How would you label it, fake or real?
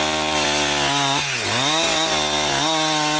real